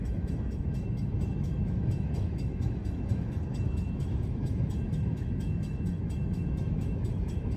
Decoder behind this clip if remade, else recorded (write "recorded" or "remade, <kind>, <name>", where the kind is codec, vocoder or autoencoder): remade, autoencoder, DAC-VAE